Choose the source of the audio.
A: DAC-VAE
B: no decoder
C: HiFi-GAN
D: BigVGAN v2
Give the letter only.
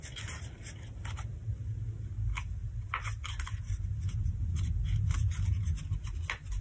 B